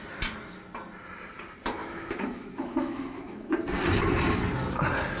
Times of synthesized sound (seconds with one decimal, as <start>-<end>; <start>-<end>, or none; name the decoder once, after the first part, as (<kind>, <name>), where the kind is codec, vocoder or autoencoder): 1.8-3.5 (autoencoder, DAC-VAE)